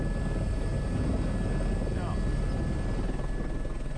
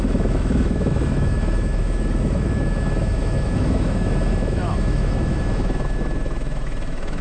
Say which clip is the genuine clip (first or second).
first